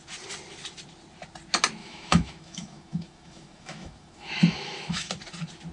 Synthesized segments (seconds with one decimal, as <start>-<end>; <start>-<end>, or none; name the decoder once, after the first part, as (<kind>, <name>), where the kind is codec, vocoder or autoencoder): 1.8-5.1 (autoencoder, DAC-VAE)